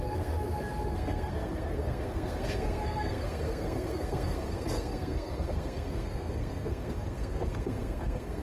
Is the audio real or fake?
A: fake